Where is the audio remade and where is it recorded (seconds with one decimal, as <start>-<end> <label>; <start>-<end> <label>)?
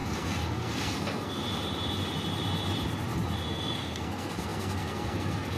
0.0-1.4 remade; 1.4-3.5 recorded; 3.5-5.6 remade